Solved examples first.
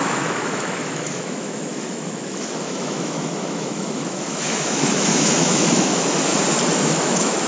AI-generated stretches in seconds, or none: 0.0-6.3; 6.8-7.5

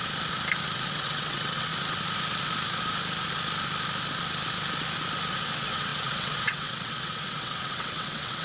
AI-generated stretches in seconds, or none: 0.9-1.7; 5.4-8.4

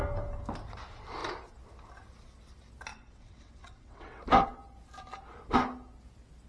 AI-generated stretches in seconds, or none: 2.9-4.2

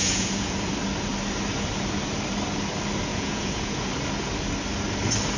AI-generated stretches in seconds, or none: 0.0-0.7; 3.1-3.9